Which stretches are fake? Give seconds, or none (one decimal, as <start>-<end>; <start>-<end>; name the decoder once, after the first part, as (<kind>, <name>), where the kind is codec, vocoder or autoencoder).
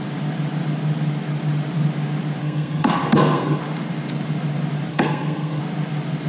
2.4-3.6 (codec, SNAC); 4.9-5.6